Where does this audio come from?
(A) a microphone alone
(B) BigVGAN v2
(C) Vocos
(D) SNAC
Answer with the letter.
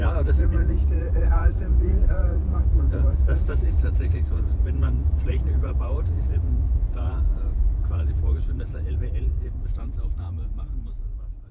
C